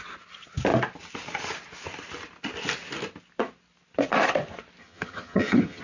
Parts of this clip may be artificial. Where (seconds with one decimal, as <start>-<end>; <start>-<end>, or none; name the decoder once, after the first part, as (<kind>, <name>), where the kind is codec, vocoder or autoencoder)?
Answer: 4.8-5.8 (vocoder, HiFi-GAN)